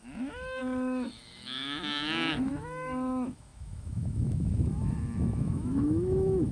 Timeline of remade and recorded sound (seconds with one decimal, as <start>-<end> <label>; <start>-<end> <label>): 0.0-6.5 remade